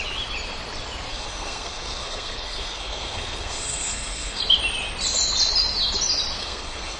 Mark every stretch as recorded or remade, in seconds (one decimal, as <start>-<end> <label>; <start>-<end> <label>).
0.0-1.1 recorded; 1.1-4.4 remade; 4.4-6.4 recorded; 6.4-7.0 remade

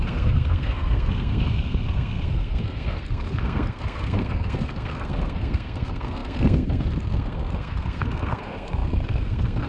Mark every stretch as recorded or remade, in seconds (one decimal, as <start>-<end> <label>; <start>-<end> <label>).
0.0-9.7 remade

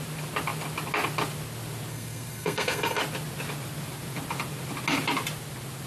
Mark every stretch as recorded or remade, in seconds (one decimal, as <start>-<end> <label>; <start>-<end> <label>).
0.0-1.9 recorded; 1.9-3.0 remade; 3.0-5.9 recorded

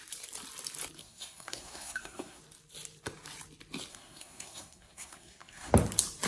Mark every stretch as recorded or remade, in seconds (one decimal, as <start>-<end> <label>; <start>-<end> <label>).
0.0-1.0 recorded; 1.0-2.4 remade; 2.4-3.9 recorded; 3.9-5.7 remade; 5.7-6.3 recorded